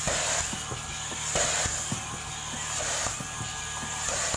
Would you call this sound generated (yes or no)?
no